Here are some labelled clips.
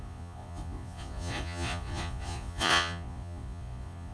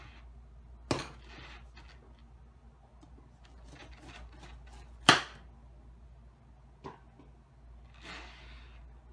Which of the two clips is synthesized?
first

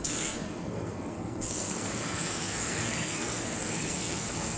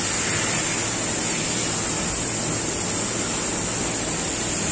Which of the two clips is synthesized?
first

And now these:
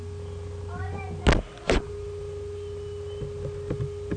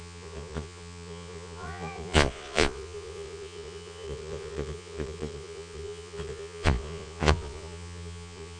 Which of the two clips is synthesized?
second